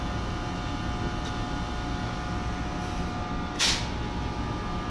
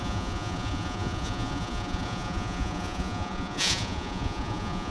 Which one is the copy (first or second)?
second